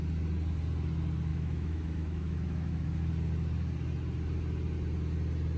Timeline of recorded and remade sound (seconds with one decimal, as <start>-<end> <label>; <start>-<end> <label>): 0.0-1.3 recorded; 1.3-3.1 remade; 3.1-5.6 recorded